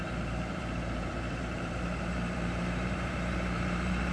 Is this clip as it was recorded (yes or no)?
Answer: no